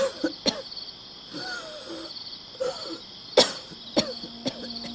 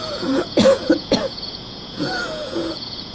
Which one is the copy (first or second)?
second